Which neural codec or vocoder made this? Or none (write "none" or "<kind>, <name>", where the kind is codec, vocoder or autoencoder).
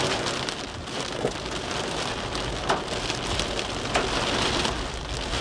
none